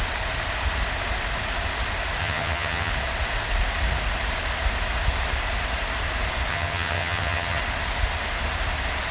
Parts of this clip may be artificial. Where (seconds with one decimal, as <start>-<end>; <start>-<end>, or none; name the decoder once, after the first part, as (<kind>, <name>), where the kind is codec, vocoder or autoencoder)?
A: 2.2-2.9 (vocoder, HiFi-GAN); 6.5-7.6